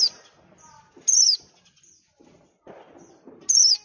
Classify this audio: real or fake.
real